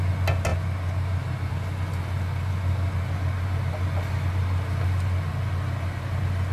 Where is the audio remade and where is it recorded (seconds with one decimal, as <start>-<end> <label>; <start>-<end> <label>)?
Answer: 0.0-6.5 recorded

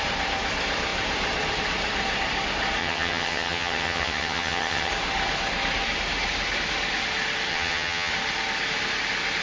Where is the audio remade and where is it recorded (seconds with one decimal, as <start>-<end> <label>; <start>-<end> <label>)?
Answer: 0.0-2.8 recorded; 2.8-4.9 remade; 4.9-7.5 recorded; 7.5-8.1 remade; 8.1-9.4 recorded

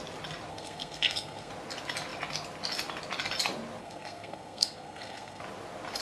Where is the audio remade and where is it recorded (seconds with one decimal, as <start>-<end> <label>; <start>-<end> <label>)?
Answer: 0.0-0.5 recorded; 0.5-1.5 remade; 1.5-3.8 recorded; 3.8-5.4 remade; 5.4-6.0 recorded

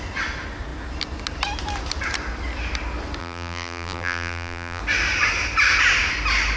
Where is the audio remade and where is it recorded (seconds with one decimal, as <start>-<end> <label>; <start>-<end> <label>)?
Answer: 0.0-3.2 recorded; 3.2-4.8 remade; 4.8-6.6 recorded

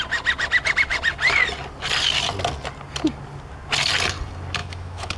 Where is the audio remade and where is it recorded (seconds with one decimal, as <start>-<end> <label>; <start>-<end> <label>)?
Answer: 0.0-4.6 recorded; 4.6-5.2 remade

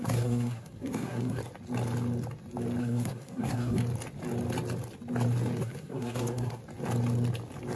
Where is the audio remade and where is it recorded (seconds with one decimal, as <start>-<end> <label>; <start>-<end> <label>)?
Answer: 0.0-1.4 remade; 1.4-2.8 recorded; 2.8-3.8 remade; 3.8-5.6 recorded; 5.6-6.6 remade; 6.6-7.8 recorded

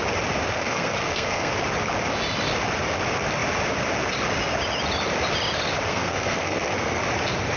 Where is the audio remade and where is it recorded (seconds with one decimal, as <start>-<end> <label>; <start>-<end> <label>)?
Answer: 0.0-0.5 recorded; 0.5-1.5 remade; 1.5-5.9 recorded; 5.9-7.0 remade; 7.0-7.6 recorded

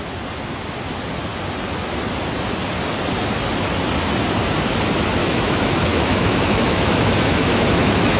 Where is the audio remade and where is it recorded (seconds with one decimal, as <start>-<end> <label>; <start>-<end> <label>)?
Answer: 0.0-5.2 recorded; 5.2-8.2 remade